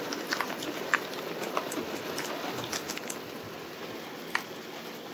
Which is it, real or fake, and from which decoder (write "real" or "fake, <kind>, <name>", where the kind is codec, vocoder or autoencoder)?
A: real